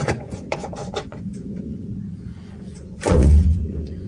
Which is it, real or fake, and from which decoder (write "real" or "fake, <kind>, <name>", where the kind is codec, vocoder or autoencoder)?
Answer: fake, vocoder, Vocos